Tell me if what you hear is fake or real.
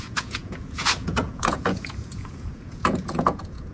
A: fake